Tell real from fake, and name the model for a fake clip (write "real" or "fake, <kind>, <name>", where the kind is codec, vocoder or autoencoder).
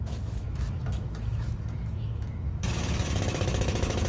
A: fake, autoencoder, DAC-VAE